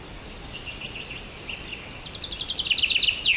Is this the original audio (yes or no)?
yes